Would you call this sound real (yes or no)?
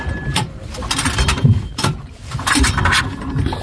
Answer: yes